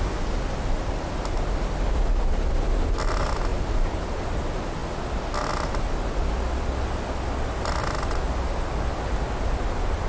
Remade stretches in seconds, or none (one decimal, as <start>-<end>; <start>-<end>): none